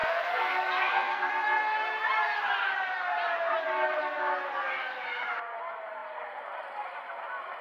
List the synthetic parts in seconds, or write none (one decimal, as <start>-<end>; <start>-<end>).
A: 0.0-1.3